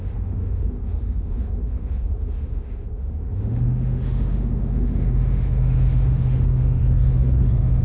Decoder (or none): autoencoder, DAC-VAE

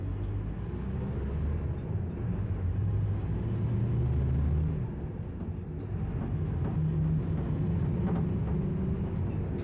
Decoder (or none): none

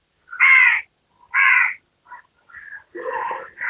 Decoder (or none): none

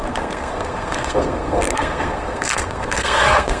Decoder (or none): codec, SNAC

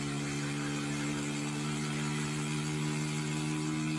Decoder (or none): none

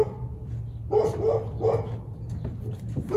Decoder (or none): none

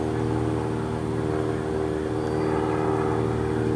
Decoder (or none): none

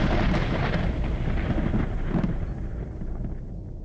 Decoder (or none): none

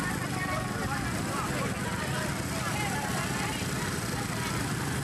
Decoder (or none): none